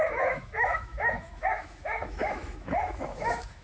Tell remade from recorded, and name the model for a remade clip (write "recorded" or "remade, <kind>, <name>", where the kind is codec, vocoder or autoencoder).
remade, autoencoder, DAC-VAE